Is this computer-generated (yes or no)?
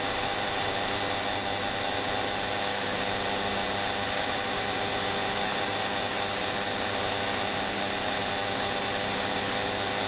no